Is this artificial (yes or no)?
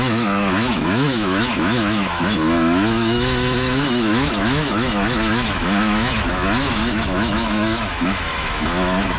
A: yes